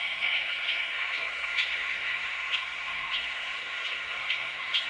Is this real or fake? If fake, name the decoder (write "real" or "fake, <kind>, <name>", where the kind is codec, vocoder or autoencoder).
fake, codec, SNAC